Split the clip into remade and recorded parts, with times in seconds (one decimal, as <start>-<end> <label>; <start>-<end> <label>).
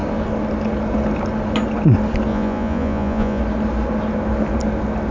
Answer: 0.0-2.3 recorded; 2.3-3.4 remade; 3.4-5.1 recorded